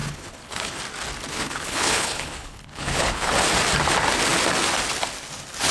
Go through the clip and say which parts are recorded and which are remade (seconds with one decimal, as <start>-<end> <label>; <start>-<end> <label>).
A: 0.0-0.8 remade; 0.8-1.3 recorded; 1.3-3.3 remade; 3.3-5.7 recorded